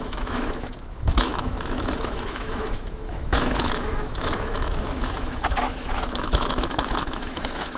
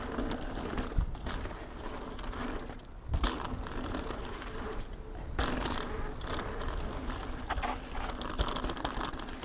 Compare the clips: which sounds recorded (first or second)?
second